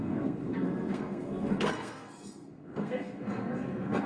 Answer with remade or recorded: remade